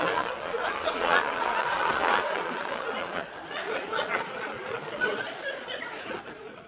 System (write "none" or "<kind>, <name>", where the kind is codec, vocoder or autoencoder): vocoder, Vocos